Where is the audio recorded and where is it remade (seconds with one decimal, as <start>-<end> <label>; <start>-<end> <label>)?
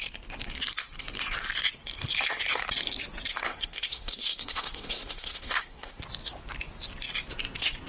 0.0-3.3 recorded; 3.3-6.0 remade; 6.0-7.9 recorded